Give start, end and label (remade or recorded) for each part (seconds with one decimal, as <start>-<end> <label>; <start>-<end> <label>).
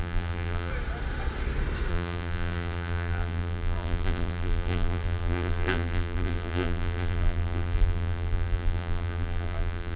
0.0-0.7 remade; 0.7-1.9 recorded; 1.9-10.0 remade